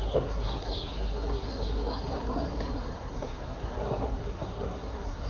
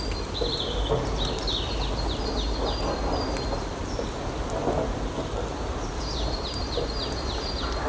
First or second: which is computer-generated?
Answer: first